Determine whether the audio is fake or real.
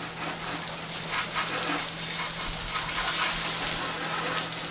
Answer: real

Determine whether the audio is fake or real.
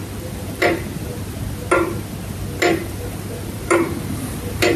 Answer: real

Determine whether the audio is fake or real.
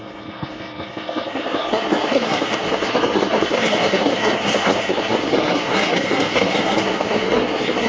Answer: fake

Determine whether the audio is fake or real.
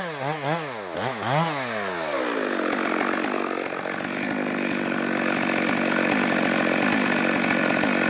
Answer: real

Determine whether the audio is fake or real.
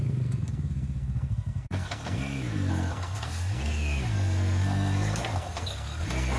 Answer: fake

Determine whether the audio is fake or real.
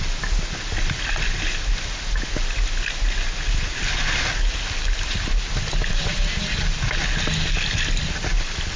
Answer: real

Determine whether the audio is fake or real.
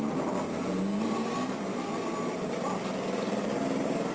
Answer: real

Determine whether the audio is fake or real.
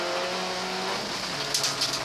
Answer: real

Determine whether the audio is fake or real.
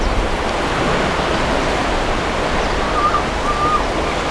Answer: real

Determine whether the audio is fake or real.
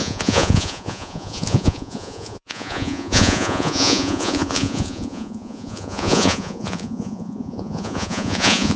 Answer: fake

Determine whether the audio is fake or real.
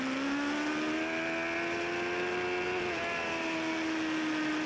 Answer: real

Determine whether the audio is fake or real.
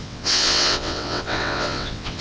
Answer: fake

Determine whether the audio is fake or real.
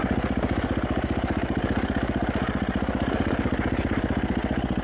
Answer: real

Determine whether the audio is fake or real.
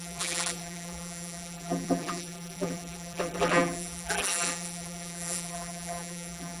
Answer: fake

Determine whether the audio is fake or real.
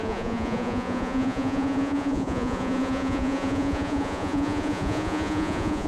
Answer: fake